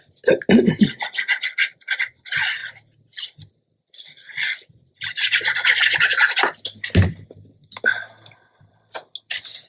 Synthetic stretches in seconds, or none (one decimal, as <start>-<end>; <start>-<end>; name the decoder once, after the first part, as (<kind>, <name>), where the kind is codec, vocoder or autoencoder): 0.9-2.0 (vocoder, Vocos)

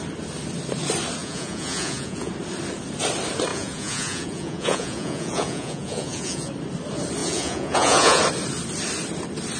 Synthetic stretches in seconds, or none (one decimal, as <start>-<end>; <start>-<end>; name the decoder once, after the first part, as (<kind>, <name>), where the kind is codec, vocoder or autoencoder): 1.2-2.3 (vocoder, Vocos); 3.5-6.5; 7.2-8.2

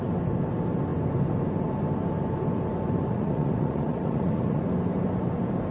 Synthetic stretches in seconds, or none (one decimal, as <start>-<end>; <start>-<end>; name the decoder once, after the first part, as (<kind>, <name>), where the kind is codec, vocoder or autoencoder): 3.1-4.6 (vocoder, Vocos)

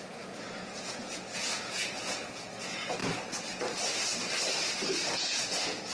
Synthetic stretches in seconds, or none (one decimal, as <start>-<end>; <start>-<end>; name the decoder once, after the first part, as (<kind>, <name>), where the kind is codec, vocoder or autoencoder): 0.0-3.0 (vocoder, Vocos); 5.0-5.9

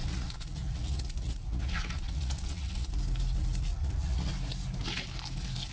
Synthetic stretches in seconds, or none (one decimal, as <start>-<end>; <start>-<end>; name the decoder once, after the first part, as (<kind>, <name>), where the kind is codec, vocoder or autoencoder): 0.0-2.9 (vocoder, Vocos); 3.7-4.3

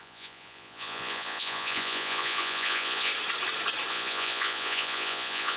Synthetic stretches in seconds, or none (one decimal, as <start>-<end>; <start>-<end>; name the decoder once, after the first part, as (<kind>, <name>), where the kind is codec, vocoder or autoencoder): 0.0-3.1 (vocoder, Vocos); 3.9-5.6

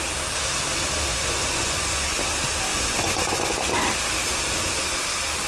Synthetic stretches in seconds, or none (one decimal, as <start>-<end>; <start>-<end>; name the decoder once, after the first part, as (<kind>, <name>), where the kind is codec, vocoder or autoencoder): 1.1-2.2 (vocoder, Vocos); 2.7-3.5